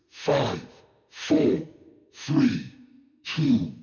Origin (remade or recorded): remade